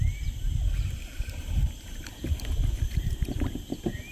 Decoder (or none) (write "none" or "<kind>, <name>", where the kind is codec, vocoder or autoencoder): none